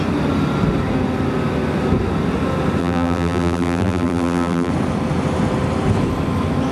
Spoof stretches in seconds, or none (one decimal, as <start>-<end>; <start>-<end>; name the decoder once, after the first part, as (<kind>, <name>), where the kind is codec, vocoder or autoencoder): 2.8-4.7 (vocoder, BigVGAN v2)